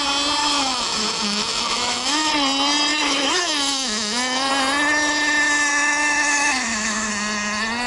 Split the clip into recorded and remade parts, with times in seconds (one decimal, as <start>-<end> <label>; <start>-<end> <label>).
0.0-0.4 recorded; 0.4-2.3 remade; 2.3-2.9 recorded; 2.9-4.5 remade; 4.5-5.7 recorded; 5.7-7.1 remade; 7.1-7.9 recorded